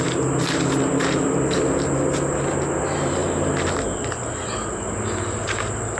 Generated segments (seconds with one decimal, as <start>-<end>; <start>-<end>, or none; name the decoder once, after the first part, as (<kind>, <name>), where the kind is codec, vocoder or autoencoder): none